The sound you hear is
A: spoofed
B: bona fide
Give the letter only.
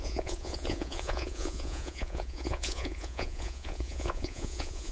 A